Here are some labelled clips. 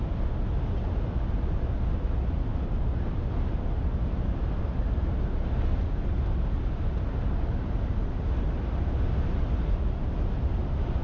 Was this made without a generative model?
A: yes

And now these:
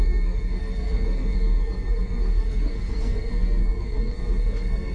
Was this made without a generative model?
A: no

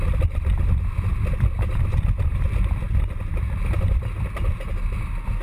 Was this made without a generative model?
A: yes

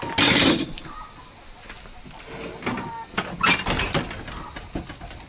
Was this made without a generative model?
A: yes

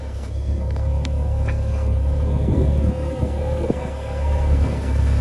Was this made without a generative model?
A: no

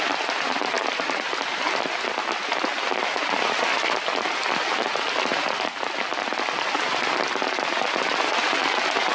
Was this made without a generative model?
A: yes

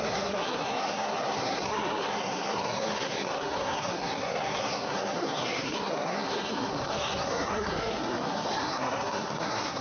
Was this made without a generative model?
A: no